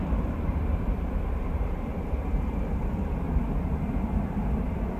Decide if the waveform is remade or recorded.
remade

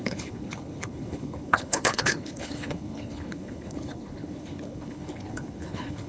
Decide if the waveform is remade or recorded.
remade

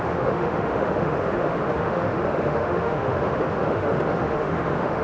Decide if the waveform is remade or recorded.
remade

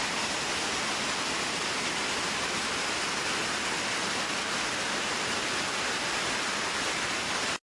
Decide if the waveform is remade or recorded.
recorded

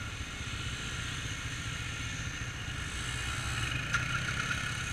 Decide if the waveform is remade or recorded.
recorded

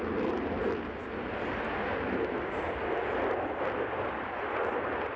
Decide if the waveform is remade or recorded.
recorded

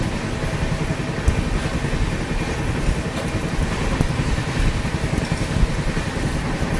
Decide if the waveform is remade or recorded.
recorded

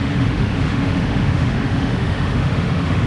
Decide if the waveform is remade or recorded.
remade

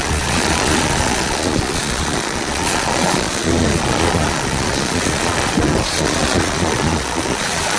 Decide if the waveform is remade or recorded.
remade